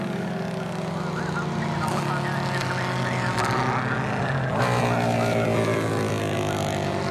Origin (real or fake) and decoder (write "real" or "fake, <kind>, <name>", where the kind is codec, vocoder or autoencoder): real